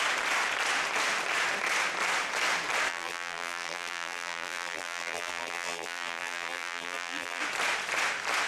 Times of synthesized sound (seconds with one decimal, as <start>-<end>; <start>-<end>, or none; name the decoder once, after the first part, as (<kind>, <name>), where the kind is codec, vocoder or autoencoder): 2.9-7.4 (vocoder, BigVGAN v2)